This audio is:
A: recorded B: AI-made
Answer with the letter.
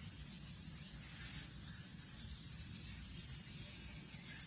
A